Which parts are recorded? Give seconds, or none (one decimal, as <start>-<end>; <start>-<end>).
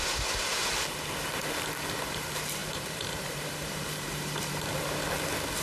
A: 0.0-2.6; 4.6-5.6